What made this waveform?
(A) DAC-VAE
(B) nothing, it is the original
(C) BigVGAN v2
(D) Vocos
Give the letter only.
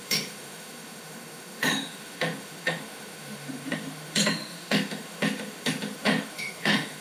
A